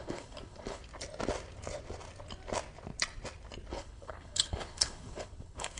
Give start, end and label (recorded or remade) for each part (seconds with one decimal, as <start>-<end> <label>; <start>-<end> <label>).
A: 0.0-0.8 remade; 0.8-3.7 recorded; 3.7-5.8 remade